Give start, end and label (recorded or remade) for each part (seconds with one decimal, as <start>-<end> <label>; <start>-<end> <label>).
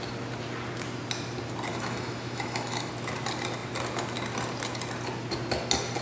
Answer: 0.0-1.7 recorded; 1.7-2.9 remade; 2.9-6.0 recorded